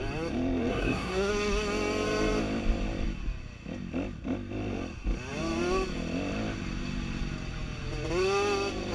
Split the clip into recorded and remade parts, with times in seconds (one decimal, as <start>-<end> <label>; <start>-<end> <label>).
0.0-0.7 recorded; 0.7-1.3 remade; 1.3-8.9 recorded